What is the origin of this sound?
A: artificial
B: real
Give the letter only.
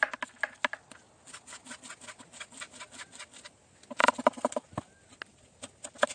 B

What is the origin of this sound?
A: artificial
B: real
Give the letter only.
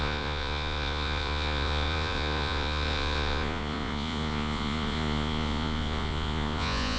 A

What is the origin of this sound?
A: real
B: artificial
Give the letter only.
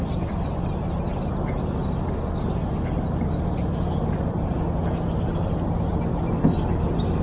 A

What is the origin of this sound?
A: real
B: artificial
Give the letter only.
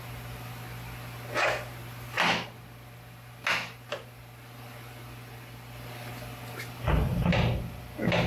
A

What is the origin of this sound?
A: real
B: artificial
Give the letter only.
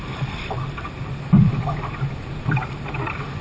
B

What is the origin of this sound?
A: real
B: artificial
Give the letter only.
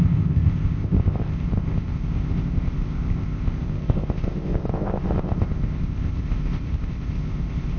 B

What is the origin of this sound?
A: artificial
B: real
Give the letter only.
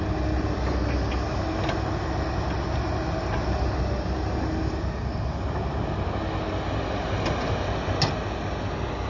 B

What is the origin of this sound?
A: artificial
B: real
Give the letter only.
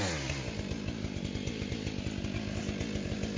B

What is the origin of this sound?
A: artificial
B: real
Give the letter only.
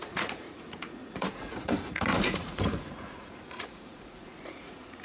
A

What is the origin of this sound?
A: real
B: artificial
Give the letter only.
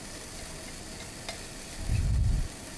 A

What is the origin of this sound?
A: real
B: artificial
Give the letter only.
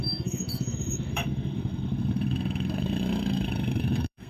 B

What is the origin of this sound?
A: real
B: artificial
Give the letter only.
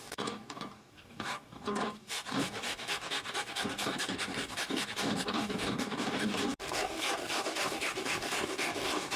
B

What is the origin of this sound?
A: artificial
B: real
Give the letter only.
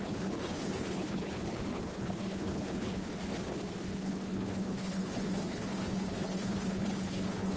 A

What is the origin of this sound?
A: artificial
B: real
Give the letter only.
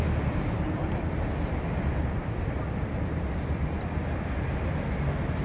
B